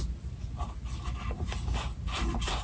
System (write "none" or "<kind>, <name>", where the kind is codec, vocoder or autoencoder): none